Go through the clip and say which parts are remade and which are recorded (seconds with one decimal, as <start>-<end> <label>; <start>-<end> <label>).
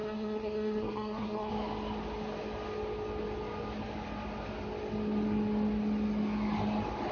0.0-1.5 remade; 1.5-7.1 recorded